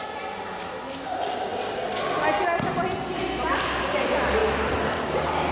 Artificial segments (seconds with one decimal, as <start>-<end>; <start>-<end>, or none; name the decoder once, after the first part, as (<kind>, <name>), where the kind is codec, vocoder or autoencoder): none